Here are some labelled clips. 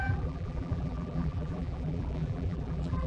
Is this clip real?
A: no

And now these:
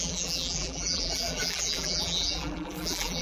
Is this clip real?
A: no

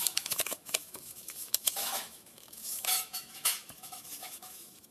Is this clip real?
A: no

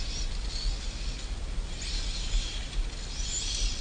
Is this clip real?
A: yes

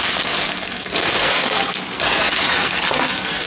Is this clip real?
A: no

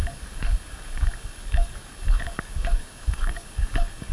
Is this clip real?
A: no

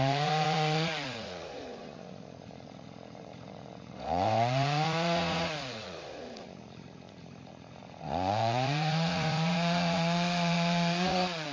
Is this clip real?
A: no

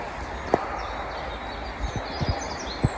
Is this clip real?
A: yes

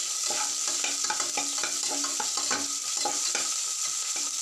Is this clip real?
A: yes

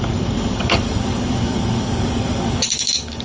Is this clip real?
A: no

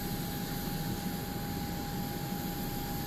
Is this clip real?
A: yes